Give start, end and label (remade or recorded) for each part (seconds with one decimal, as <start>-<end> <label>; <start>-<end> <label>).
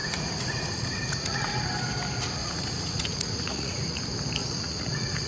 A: 0.0-1.6 remade; 1.6-2.4 recorded; 2.4-4.0 remade; 4.0-4.4 recorded; 4.4-5.3 remade